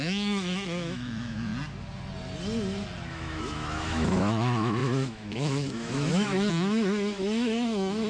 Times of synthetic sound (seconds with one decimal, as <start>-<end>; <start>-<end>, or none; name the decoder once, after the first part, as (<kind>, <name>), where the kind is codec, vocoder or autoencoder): 0.0-1.5 (autoencoder, DAC-VAE); 3.1-8.1